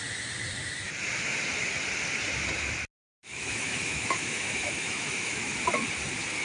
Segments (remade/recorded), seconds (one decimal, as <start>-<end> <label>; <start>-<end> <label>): 0.0-3.0 recorded; 3.0-5.6 remade; 5.6-6.4 recorded